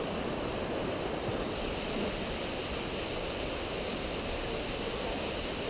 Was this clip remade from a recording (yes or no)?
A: yes